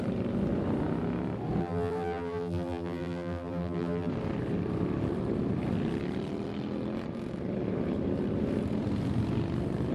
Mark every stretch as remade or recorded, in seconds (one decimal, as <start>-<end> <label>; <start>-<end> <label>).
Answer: 0.0-1.6 recorded; 1.6-4.1 remade; 4.1-9.9 recorded